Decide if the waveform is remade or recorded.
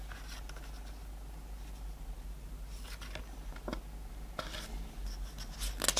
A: recorded